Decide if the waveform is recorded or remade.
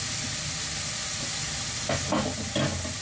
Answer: recorded